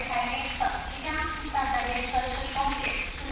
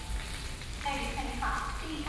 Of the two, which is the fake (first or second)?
first